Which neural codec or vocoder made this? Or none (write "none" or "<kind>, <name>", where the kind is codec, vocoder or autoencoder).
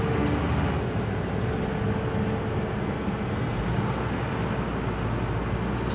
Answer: none